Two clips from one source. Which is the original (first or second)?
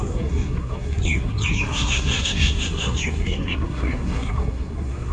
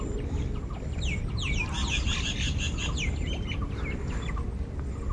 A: second